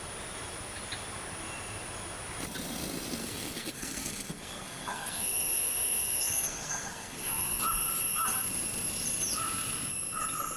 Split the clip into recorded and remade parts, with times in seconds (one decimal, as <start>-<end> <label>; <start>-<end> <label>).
0.0-3.2 recorded; 3.2-7.6 remade; 7.6-10.6 recorded